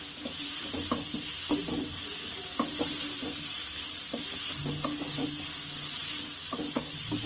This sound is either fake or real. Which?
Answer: real